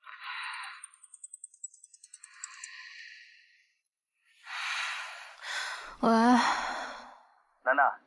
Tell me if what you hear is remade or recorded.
recorded